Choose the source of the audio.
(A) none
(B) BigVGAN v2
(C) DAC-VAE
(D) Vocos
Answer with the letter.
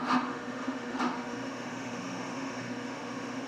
C